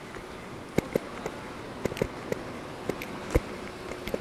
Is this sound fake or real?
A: real